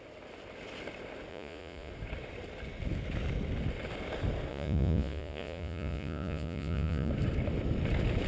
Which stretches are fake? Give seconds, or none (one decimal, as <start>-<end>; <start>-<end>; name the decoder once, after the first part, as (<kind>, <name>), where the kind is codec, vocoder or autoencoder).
1.3-1.9 (vocoder, Vocos); 4.5-7.1

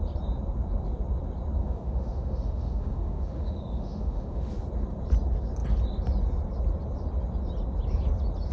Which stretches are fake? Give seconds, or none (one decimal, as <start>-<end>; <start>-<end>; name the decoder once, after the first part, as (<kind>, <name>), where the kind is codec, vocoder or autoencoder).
1.6-4.5 (autoencoder, DAC-VAE)

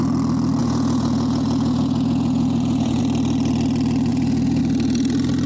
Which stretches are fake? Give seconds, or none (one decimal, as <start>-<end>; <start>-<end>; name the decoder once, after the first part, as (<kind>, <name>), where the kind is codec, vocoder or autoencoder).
0.6-3.0 (vocoder, Vocos); 4.1-4.6

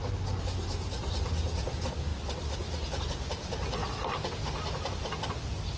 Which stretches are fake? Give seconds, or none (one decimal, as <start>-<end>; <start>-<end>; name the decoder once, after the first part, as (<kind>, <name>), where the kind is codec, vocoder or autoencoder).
none